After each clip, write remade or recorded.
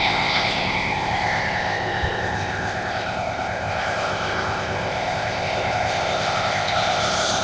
remade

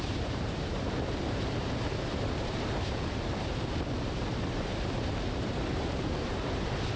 remade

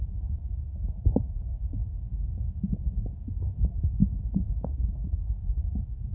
remade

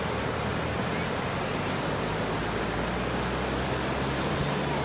recorded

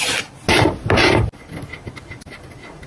recorded